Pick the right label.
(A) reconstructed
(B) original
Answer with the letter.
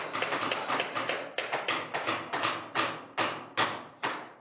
B